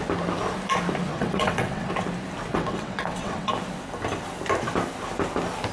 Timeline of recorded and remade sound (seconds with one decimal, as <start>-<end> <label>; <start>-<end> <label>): 0.0-1.1 recorded; 1.1-1.9 remade; 1.9-2.5 recorded; 2.5-3.5 remade; 3.5-5.7 recorded